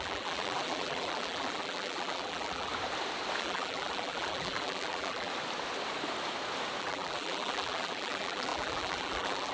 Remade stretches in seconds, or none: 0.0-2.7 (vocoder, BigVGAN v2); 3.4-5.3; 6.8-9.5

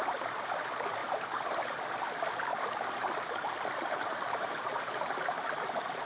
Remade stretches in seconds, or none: none

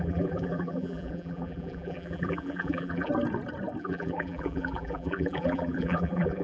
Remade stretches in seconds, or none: 0.0-3.1 (vocoder, BigVGAN v2); 3.8-6.4

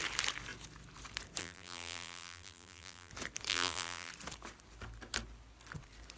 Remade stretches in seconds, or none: 1.4-3.1 (vocoder, BigVGAN v2); 3.5-4.1

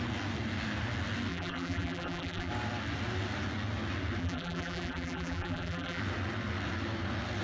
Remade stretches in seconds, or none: 1.3-2.5 (vocoder, BigVGAN v2); 4.2-6.0

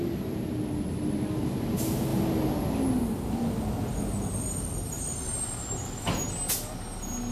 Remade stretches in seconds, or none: none